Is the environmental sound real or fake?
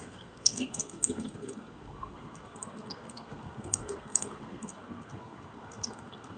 fake